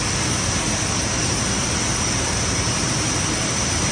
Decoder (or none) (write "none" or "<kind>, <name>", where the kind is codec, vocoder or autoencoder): none